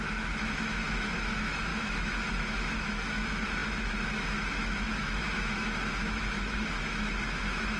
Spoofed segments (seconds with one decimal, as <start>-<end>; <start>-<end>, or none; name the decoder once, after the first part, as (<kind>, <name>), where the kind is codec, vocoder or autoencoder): 0.0-7.8 (autoencoder, DAC-VAE)